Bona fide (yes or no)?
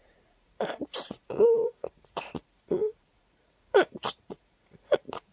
no